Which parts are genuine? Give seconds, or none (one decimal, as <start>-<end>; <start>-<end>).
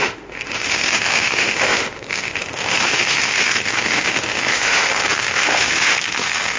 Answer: none